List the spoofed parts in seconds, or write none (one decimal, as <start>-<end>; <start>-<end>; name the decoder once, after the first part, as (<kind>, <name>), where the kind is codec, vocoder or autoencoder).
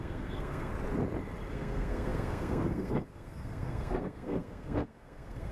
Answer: 0.0-0.7 (codec, SNAC); 1.5-5.5